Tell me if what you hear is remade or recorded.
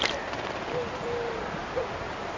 recorded